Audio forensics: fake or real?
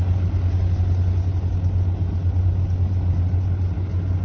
real